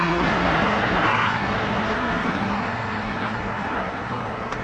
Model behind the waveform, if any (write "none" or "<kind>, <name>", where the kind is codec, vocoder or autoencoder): codec, SNAC